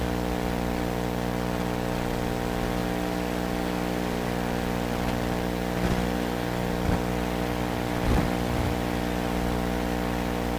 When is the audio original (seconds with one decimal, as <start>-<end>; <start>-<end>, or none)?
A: 0.0-10.6